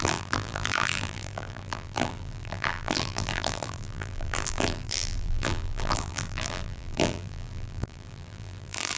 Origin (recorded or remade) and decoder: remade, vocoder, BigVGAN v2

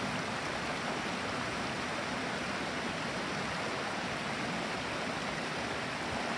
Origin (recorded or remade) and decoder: recorded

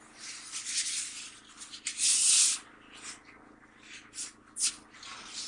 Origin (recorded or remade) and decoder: recorded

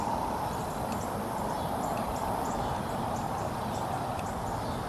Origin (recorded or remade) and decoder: recorded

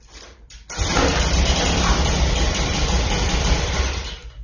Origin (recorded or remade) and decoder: recorded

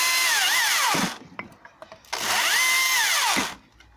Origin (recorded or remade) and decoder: recorded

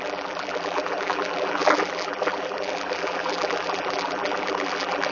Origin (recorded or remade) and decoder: remade, vocoder, BigVGAN v2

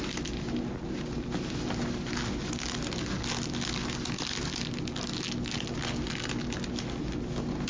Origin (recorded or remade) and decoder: recorded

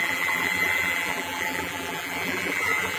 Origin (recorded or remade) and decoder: remade, vocoder, BigVGAN v2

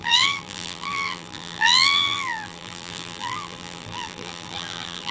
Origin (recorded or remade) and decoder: remade, vocoder, BigVGAN v2